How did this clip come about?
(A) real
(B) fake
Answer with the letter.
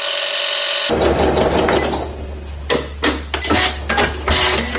A